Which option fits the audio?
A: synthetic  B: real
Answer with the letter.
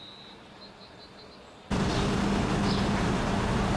B